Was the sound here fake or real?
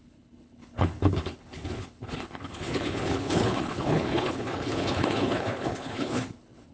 fake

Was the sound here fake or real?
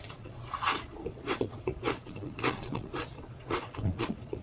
fake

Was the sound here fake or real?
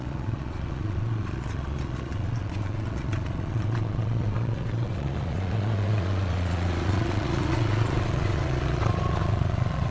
fake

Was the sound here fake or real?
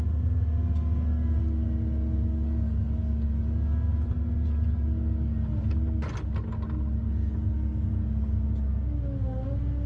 real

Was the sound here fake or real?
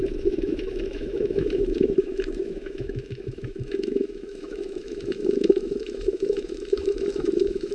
fake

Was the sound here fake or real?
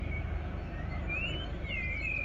real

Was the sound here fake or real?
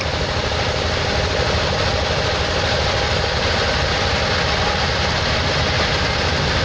real